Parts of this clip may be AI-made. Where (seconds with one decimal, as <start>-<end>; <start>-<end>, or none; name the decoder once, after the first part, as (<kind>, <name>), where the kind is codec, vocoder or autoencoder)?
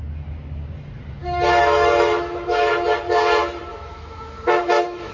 1.2-2.7 (autoencoder, DAC-VAE); 3.7-5.1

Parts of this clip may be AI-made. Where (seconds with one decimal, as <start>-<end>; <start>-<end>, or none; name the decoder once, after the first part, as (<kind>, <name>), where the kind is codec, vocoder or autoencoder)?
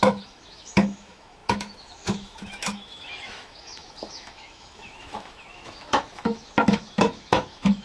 0.0-7.8 (autoencoder, DAC-VAE)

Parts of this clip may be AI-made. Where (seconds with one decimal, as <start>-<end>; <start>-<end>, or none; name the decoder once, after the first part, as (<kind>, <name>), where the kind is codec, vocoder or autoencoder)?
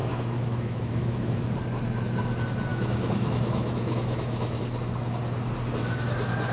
0.0-1.6 (autoencoder, DAC-VAE); 2.7-4.6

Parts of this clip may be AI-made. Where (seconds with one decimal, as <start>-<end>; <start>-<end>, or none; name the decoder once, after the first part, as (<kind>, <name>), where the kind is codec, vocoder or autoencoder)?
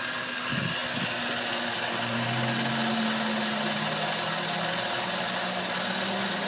none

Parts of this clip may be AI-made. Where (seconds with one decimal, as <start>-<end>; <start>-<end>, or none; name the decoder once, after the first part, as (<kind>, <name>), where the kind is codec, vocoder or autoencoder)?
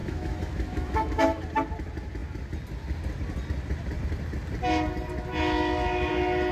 0.0-1.4 (autoencoder, DAC-VAE)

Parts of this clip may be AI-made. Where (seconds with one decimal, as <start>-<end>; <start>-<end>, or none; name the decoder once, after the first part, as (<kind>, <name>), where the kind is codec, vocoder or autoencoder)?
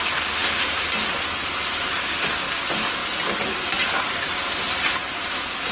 none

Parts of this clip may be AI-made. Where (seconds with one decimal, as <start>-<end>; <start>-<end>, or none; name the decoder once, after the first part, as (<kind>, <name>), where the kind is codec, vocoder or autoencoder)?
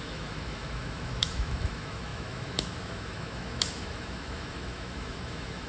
0.0-5.7 (autoencoder, DAC-VAE)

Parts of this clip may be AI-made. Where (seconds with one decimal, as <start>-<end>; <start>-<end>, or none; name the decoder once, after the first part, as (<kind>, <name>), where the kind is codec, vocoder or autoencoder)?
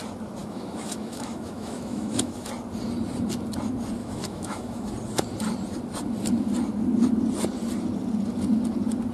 0.4-2.5 (autoencoder, DAC-VAE); 4.0-4.9